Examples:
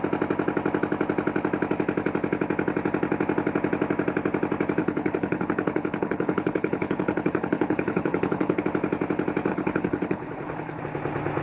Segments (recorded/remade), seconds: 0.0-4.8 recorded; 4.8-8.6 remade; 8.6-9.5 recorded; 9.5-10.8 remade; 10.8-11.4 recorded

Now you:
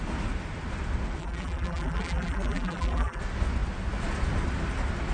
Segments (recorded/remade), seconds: 0.0-1.2 recorded; 1.2-3.2 remade; 3.2-5.1 recorded